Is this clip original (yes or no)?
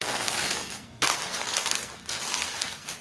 no